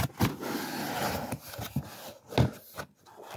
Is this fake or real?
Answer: real